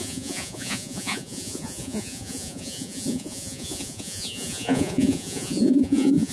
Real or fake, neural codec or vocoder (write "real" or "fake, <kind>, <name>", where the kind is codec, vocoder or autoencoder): fake, vocoder, Vocos